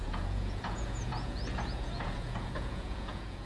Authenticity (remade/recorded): remade